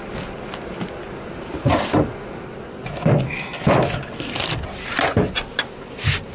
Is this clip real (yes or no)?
yes